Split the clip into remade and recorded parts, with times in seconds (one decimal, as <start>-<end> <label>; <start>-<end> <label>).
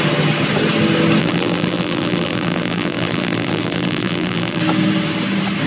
0.0-1.2 recorded; 1.2-4.6 remade; 4.6-5.7 recorded